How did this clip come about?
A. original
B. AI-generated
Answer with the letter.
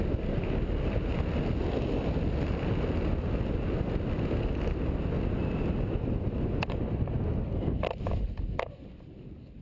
A